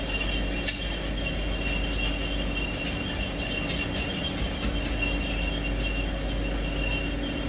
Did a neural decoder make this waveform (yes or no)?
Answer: no